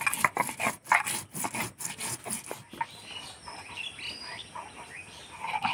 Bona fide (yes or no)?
yes